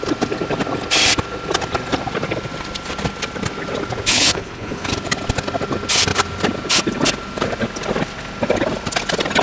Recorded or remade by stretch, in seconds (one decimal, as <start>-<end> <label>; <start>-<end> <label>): 0.0-4.1 recorded; 4.1-4.9 remade; 4.9-9.4 recorded